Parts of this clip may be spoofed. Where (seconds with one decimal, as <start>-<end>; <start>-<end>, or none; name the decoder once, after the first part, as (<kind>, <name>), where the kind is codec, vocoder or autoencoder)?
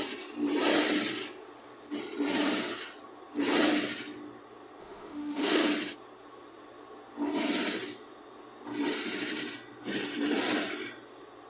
4.8-5.6 (autoencoder, DAC-VAE)